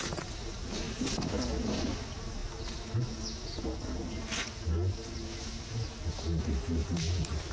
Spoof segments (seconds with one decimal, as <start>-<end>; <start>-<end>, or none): none